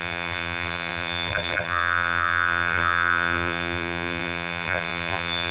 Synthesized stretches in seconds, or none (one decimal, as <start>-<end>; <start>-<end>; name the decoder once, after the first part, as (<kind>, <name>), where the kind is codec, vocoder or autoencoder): 0.0-5.5 (vocoder, BigVGAN v2)